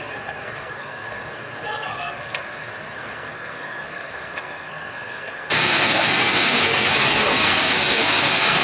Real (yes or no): no